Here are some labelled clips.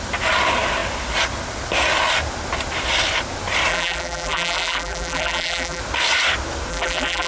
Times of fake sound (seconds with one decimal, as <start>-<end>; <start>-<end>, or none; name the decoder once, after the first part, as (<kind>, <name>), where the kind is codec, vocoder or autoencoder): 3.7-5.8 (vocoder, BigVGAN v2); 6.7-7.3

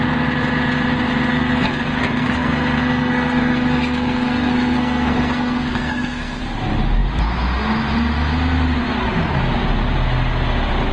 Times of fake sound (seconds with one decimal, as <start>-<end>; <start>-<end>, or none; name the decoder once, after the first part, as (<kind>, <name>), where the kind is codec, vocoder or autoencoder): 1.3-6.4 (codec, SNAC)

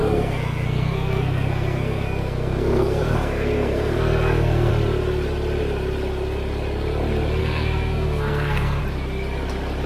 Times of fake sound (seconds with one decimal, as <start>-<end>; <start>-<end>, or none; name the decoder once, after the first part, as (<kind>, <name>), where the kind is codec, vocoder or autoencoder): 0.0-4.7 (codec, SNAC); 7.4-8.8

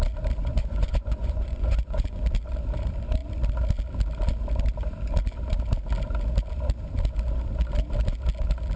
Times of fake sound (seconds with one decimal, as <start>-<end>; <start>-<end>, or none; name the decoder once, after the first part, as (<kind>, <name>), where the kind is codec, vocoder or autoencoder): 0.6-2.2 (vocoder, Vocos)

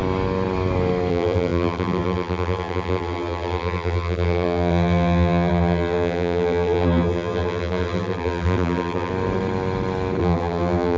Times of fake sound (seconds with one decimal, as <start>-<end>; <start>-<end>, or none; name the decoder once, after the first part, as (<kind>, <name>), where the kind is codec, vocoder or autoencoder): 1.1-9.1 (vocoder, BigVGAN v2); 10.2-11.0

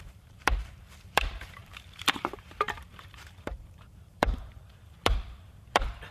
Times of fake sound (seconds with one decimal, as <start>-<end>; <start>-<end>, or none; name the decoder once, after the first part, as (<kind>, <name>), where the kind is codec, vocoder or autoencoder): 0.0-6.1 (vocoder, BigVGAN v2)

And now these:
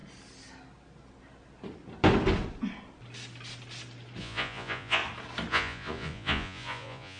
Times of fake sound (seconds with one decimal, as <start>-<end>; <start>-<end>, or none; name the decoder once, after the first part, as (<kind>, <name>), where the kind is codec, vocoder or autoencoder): 4.2-5.0 (vocoder, Vocos); 5.5-7.2

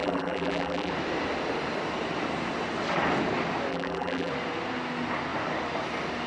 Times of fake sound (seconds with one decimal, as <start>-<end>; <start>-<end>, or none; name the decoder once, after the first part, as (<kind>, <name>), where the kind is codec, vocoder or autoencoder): 0.0-0.9 (vocoder, BigVGAN v2); 3.7-4.3